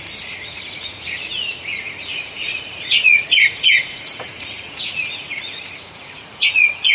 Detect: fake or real fake